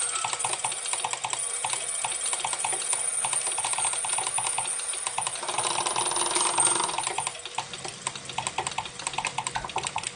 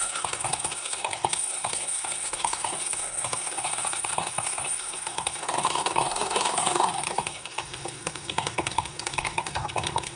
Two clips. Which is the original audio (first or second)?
first